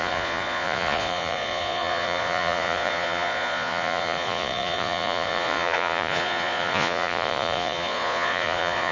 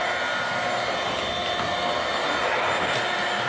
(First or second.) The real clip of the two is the second